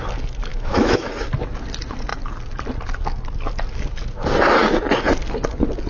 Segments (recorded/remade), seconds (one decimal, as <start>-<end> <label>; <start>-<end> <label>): 0.0-0.5 recorded; 0.5-1.1 remade; 1.1-5.9 recorded